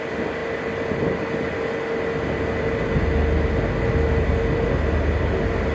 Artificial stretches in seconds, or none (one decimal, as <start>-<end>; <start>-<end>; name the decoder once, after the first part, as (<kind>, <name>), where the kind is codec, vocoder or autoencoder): none